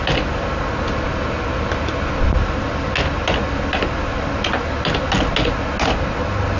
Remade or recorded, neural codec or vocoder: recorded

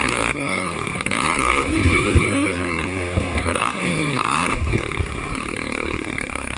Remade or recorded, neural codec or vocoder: remade, codec, SNAC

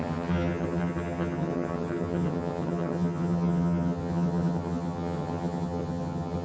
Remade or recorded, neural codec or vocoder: remade, vocoder, HiFi-GAN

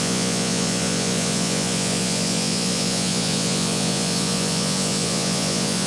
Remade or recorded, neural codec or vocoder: remade, vocoder, Vocos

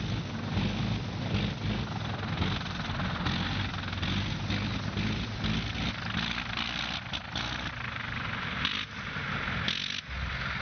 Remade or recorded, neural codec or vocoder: recorded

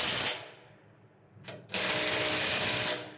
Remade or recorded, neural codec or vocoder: recorded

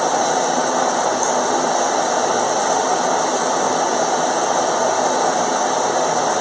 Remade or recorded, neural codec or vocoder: recorded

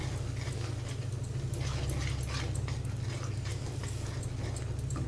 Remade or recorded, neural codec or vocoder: recorded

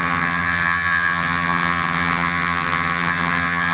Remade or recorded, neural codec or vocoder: remade, vocoder, HiFi-GAN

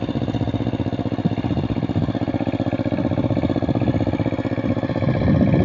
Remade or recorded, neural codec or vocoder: recorded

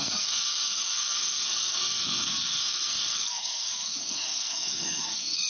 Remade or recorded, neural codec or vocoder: remade, codec, SNAC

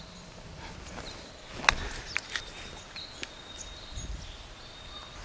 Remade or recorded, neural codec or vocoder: recorded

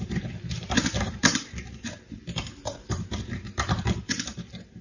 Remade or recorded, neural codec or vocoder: remade, vocoder, BigVGAN v2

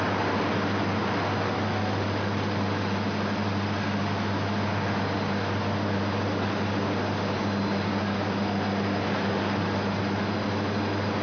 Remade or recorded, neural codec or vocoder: recorded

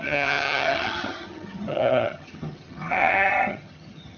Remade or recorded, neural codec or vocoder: remade, vocoder, HiFi-GAN